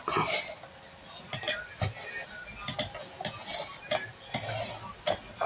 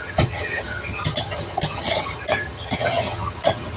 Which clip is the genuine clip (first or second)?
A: first